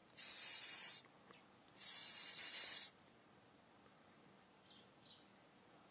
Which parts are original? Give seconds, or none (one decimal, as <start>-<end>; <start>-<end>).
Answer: 0.0-5.9